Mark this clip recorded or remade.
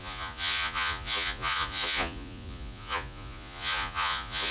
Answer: remade